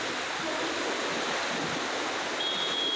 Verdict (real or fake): real